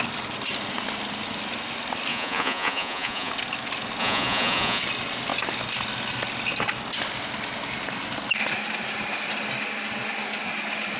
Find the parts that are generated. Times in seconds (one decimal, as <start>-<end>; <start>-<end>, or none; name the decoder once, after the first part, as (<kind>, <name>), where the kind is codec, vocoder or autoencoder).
2.1-3.3 (vocoder, Vocos); 4.0-4.8